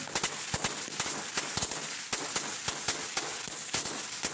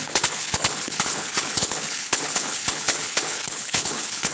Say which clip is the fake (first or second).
second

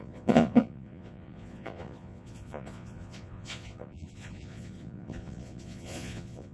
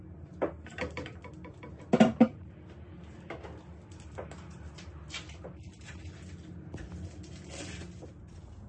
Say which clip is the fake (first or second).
first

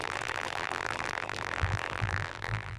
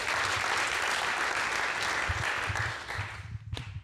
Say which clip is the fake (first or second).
first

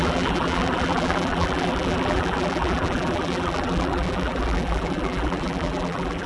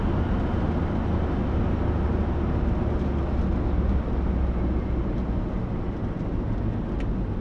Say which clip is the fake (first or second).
first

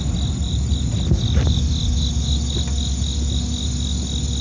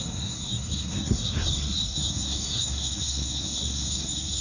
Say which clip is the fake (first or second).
second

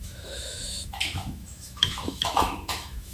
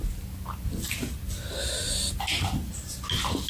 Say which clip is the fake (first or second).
first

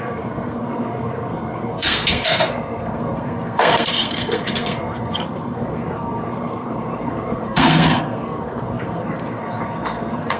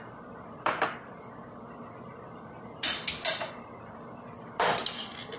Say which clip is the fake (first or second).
first